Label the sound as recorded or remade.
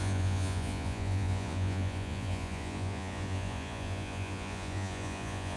remade